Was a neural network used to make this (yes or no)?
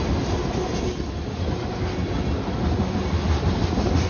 no